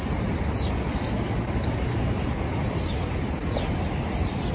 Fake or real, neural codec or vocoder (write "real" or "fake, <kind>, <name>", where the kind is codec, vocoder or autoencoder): real